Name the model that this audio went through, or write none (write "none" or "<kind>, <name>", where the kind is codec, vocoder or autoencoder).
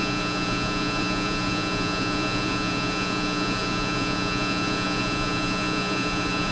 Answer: vocoder, Vocos